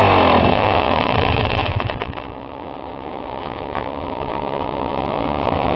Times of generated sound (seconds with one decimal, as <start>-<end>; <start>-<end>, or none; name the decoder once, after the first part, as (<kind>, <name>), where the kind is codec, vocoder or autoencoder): 0.5-5.8 (vocoder, WaveNeXt)

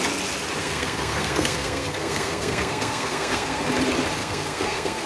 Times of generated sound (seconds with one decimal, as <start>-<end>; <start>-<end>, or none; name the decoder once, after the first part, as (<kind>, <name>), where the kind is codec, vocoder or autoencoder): 0.6-3.7 (codec, SNAC); 4.2-5.1

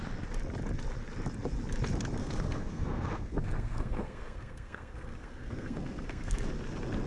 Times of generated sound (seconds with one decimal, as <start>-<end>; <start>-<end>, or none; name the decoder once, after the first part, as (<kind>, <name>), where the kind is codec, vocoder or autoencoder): 2.2-6.5 (codec, SNAC)